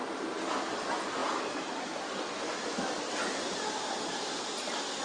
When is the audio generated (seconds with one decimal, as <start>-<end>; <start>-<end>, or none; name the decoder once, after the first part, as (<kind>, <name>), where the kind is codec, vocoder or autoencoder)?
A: none